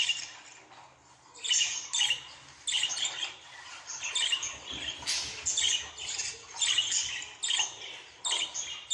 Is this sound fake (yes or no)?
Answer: no